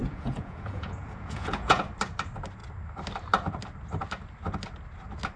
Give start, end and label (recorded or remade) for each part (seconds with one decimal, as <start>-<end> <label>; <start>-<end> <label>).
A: 0.0-1.8 remade; 1.8-5.4 recorded